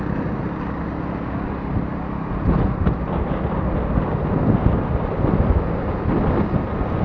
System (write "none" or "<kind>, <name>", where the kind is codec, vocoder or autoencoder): none